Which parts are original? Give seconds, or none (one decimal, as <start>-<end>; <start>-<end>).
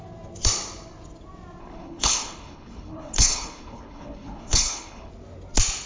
0.0-1.6; 5.1-5.9